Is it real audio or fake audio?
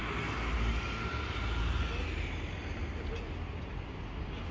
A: real